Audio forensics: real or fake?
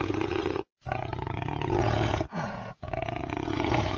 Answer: fake